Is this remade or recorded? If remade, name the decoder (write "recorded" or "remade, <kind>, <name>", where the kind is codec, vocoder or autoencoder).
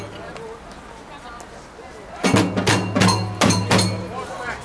recorded